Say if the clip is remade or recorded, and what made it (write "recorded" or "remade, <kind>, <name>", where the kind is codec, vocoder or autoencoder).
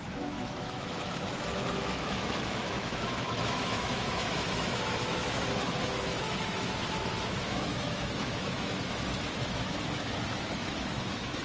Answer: remade, autoencoder, DAC-VAE